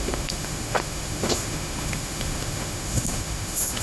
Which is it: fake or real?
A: fake